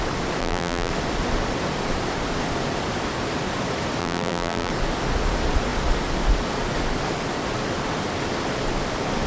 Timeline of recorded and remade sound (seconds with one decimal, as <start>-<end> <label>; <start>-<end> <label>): 0.0-0.4 recorded; 0.4-0.9 remade; 0.9-4.0 recorded; 4.0-4.7 remade; 4.7-9.3 recorded